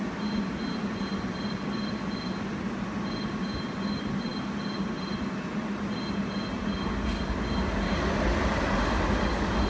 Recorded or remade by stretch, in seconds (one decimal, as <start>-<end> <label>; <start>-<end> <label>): 0.0-9.7 recorded